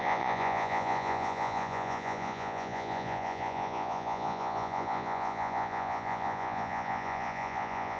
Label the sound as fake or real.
fake